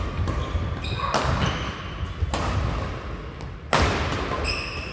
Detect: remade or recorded recorded